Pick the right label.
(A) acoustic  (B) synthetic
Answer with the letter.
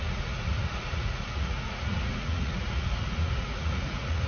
B